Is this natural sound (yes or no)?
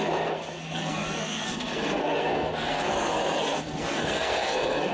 no